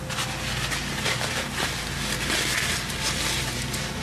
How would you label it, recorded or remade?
recorded